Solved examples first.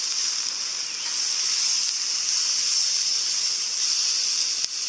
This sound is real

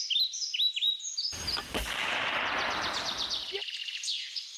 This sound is real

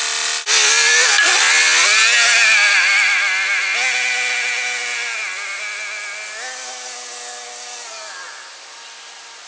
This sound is real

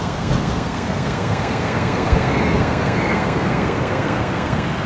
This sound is fake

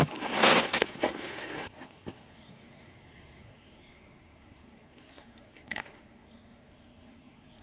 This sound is fake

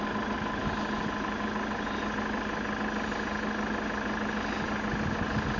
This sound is real